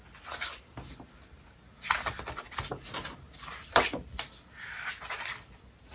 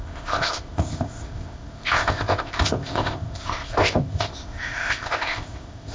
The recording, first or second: first